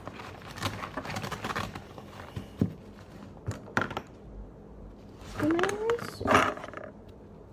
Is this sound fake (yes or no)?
no